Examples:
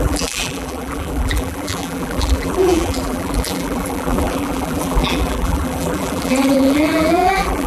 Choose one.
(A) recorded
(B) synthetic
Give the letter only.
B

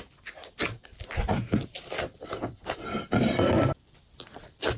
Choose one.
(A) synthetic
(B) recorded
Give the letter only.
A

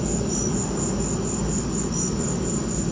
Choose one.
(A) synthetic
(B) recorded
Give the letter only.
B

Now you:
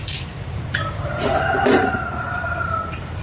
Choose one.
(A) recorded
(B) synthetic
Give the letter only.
B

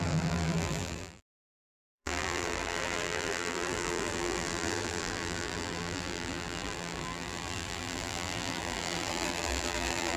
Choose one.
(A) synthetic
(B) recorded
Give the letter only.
A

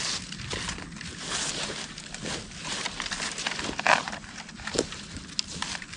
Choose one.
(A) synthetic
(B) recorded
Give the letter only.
B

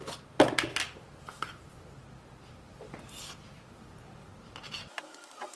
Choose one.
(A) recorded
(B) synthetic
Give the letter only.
A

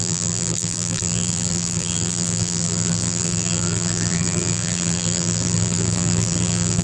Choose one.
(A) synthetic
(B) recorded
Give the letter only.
A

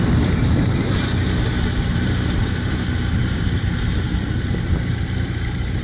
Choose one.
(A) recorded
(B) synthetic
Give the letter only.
B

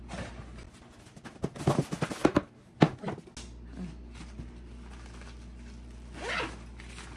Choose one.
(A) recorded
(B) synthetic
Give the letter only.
A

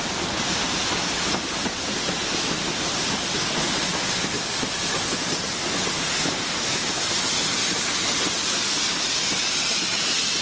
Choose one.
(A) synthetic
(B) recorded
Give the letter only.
B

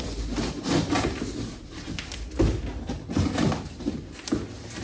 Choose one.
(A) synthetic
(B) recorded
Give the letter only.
B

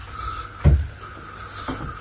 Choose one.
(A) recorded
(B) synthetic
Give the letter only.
A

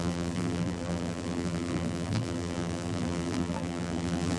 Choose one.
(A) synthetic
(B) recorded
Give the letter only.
A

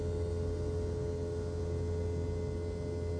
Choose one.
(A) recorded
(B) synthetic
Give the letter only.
A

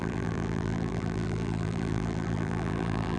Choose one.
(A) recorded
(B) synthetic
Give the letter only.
B